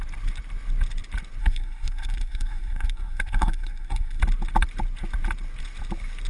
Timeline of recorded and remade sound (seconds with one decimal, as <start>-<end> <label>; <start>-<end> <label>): 0.0-1.4 recorded; 1.4-4.2 remade; 4.2-6.3 recorded